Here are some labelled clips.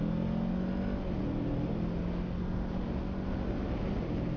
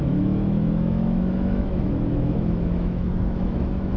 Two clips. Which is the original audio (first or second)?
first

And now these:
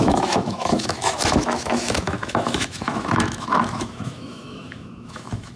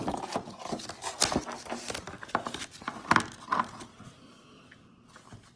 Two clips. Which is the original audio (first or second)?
second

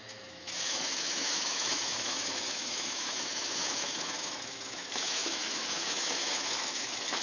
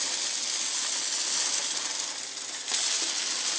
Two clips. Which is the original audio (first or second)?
second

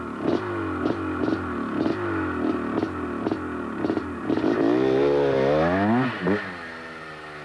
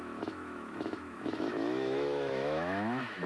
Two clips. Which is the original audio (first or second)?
first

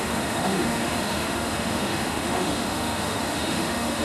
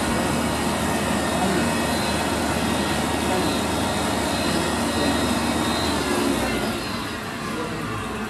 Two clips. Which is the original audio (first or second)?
second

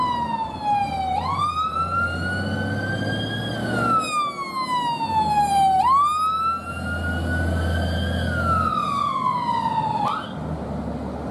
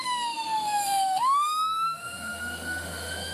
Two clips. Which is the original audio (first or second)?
first